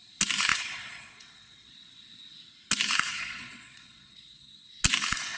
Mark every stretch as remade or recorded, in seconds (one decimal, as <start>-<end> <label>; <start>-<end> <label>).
0.0-0.5 recorded; 0.5-1.7 remade; 1.7-3.1 recorded; 3.1-4.5 remade; 4.5-5.4 recorded